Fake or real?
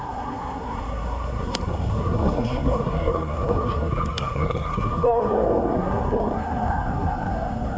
fake